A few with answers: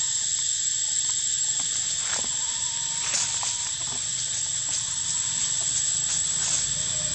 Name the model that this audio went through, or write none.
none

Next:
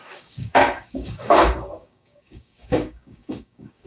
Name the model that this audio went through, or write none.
codec, DAC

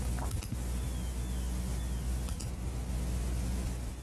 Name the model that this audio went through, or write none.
none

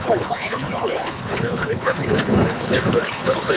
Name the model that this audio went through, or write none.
codec, HILCodec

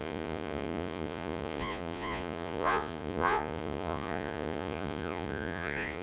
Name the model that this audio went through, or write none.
vocoder, Vocos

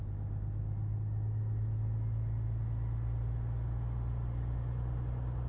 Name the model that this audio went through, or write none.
none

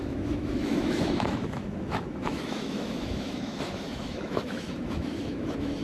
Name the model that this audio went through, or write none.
autoencoder, DAC-VAE